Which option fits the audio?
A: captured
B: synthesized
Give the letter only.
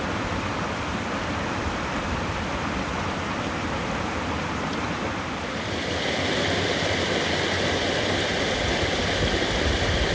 A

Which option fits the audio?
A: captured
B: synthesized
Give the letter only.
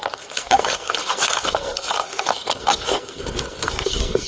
B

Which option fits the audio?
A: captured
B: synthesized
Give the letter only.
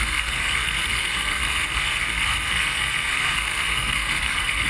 B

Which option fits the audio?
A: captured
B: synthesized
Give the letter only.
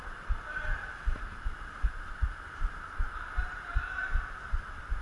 A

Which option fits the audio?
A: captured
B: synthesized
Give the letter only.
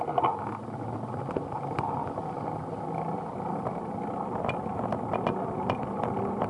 A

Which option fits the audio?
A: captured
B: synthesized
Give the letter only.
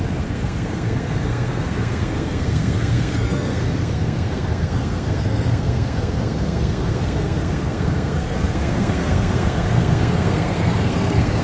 B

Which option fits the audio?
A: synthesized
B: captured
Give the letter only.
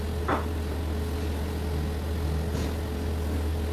B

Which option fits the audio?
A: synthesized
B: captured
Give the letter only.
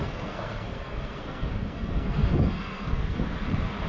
A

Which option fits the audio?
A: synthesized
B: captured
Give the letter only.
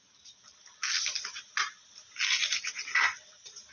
B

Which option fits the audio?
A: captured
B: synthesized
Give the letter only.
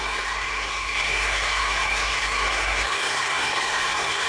B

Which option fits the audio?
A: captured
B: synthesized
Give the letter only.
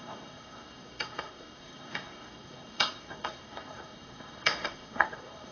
B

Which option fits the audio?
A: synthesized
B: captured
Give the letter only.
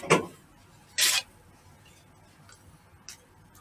B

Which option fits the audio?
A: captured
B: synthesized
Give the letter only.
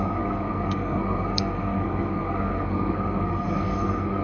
B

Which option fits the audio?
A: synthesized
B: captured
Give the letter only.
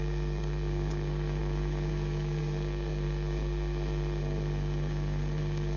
A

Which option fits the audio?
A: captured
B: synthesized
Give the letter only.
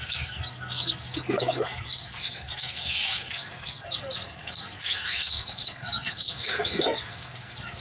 B